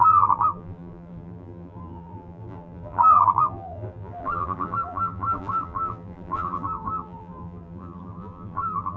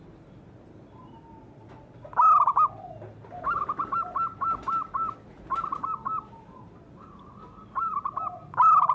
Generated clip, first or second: first